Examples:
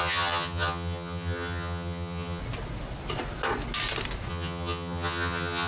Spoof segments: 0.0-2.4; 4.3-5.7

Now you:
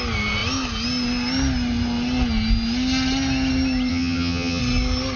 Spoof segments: 3.9-4.6

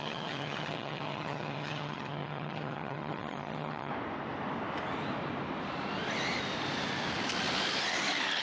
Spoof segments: 0.0-3.9

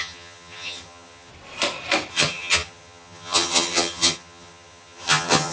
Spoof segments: 0.0-1.3; 2.1-5.5

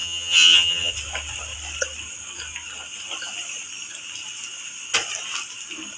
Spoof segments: 0.0-0.9

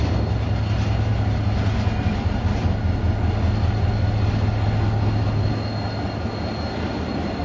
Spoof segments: none

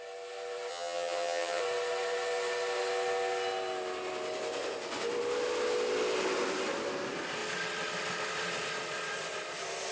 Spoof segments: 0.7-1.6

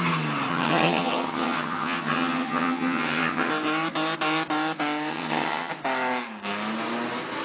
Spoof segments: 0.5-3.5; 5.1-5.7